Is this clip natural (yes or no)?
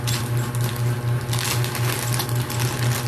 yes